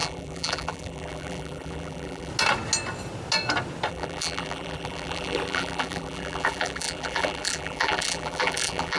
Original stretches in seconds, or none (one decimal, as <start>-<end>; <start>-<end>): 2.3-3.9